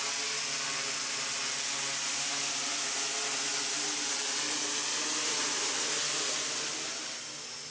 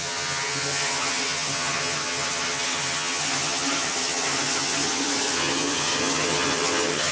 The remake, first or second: second